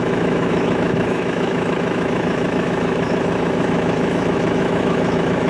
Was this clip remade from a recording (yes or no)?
yes